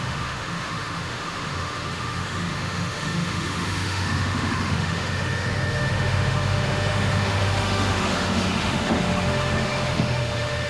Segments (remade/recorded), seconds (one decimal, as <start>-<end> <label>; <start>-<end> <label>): 0.0-10.7 remade